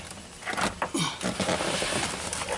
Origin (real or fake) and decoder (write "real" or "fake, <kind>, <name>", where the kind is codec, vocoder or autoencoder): real